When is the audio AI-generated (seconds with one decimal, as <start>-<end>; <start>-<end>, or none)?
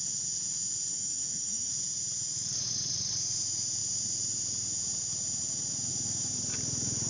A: 0.9-1.7